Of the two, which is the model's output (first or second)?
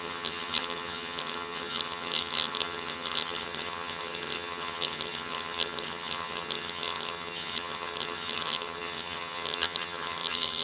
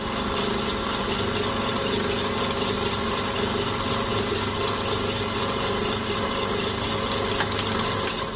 first